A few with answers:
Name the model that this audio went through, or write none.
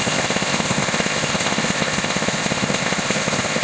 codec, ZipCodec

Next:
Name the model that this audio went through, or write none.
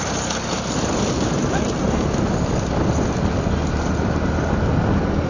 none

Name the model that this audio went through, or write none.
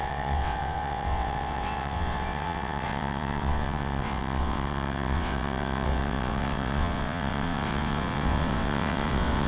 vocoder, WaveNeXt